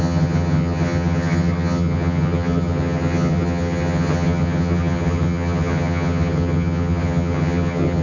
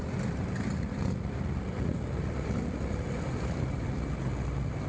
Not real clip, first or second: first